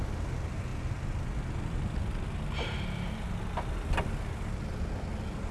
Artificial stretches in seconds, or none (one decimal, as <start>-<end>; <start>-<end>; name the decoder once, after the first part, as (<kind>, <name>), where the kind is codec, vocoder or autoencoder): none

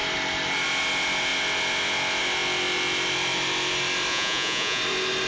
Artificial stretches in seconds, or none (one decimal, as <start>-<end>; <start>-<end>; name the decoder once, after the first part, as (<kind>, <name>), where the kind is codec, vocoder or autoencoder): 4.1-4.8 (vocoder, Vocos)

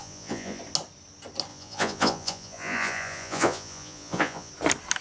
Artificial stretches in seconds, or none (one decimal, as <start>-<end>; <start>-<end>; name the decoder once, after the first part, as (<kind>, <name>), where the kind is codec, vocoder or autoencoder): 0.0-0.6 (vocoder, Vocos); 1.5-4.5

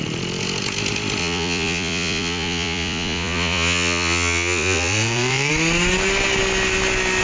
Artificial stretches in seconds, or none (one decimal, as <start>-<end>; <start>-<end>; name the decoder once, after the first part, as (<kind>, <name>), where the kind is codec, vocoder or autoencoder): 1.2-5.5 (vocoder, Vocos)

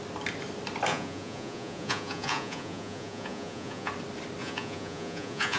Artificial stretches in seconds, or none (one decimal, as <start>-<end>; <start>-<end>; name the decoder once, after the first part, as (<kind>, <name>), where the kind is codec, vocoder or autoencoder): 0.9-3.9 (vocoder, Vocos); 4.4-5.6

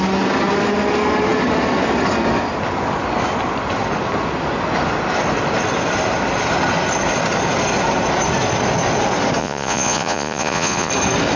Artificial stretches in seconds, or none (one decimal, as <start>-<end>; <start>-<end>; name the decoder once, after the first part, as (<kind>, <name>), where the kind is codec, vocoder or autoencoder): 9.4-10.9 (vocoder, Vocos)

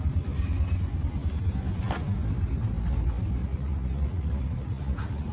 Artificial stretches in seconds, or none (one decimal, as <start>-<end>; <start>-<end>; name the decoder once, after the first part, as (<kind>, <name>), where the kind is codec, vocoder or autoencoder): 3.4-5.3 (vocoder, Vocos)

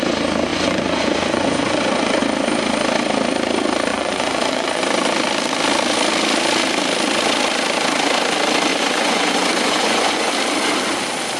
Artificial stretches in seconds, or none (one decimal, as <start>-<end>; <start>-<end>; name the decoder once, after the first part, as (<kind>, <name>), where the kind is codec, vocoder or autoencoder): 0.5-2.2 (vocoder, Vocos); 3.9-4.8; 8.7-10.3